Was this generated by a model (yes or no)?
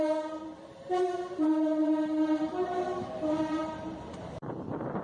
yes